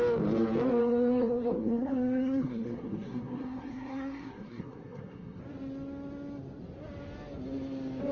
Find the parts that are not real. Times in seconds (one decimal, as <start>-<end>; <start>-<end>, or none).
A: 0.8-5.4